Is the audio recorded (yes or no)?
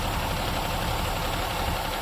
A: yes